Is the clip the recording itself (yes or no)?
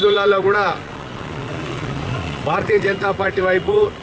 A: no